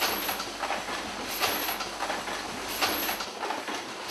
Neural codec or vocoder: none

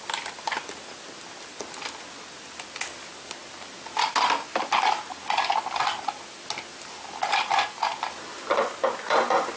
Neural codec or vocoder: none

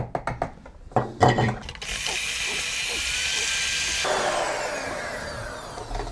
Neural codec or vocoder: none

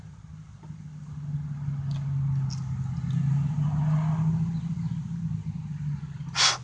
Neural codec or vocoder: none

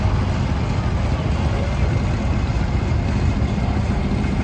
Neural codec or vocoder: none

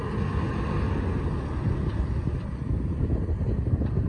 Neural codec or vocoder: none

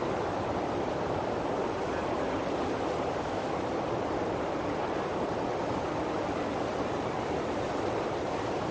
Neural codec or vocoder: vocoder, BigVGAN v2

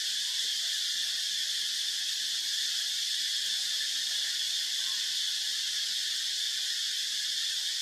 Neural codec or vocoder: none